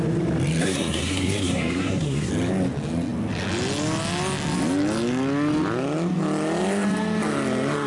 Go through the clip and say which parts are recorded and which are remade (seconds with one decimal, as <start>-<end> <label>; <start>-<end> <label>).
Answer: 0.0-0.6 recorded; 0.6-2.3 remade; 2.3-7.9 recorded